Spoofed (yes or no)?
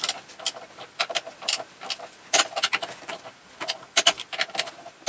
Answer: no